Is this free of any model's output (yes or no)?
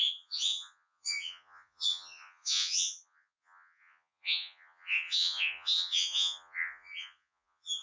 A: no